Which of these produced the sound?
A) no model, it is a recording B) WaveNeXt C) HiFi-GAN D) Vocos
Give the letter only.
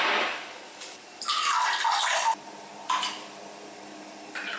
A